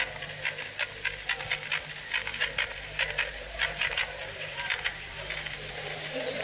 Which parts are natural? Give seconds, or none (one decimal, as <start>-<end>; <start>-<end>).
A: 0.0-2.3